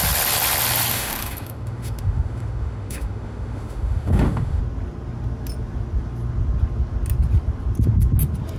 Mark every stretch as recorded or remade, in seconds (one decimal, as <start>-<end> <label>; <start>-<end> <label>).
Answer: 0.0-0.9 recorded; 0.9-4.6 remade; 4.6-8.6 recorded